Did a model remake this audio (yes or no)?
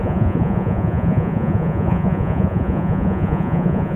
yes